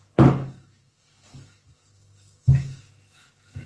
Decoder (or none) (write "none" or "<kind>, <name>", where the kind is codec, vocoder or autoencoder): codec, DAC